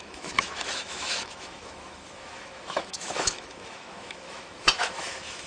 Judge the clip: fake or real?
fake